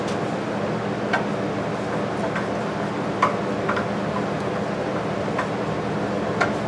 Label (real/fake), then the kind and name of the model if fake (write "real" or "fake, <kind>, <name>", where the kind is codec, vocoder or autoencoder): real